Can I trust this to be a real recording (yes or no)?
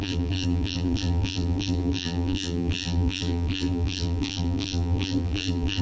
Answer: no